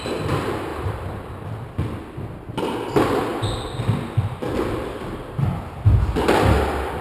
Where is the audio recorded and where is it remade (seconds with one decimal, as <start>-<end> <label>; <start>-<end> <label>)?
0.0-7.0 recorded